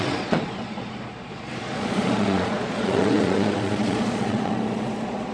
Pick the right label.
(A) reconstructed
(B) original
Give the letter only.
A